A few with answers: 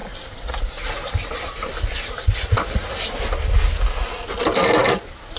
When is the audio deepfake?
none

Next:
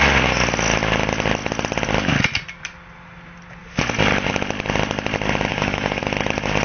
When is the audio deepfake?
5.5-6.0 (codec, DAC)

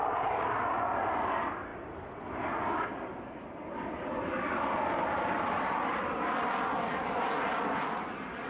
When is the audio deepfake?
none

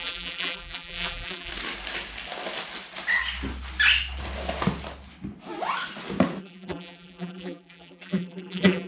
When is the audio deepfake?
0.0-1.5 (vocoder, BigVGAN v2); 6.4-8.9

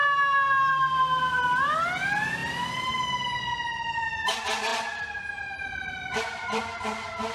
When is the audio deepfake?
0.0-1.4 (vocoder, BigVGAN v2); 4.7-6.6

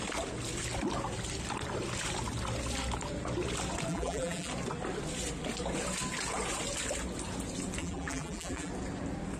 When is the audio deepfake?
3.9-4.5 (vocoder, BigVGAN v2); 7.8-8.7

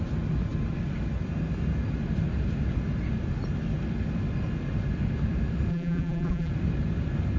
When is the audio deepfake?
5.7-6.5 (vocoder, BigVGAN v2)